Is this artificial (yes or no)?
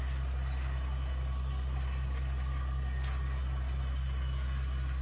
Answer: no